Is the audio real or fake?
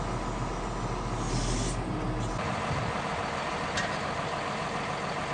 real